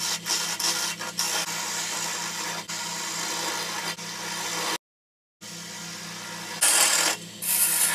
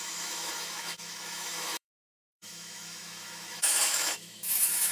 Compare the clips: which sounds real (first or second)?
first